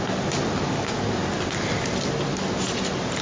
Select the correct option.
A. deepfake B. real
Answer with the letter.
B